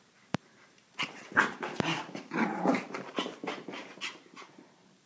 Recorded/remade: remade